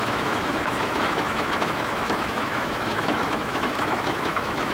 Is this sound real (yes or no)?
no